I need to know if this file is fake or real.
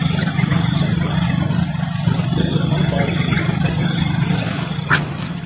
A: real